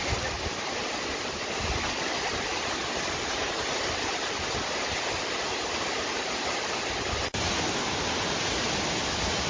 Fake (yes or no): no